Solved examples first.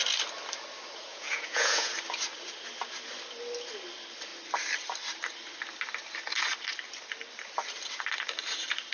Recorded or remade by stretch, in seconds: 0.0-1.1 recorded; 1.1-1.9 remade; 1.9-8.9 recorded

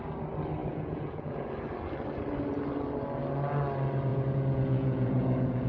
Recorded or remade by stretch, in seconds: 0.0-0.6 recorded; 0.6-1.5 remade; 1.5-4.1 recorded; 4.1-5.7 remade

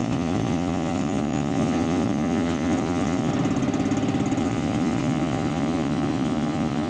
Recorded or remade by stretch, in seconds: 0.0-3.3 remade; 3.3-4.4 recorded; 4.4-6.9 remade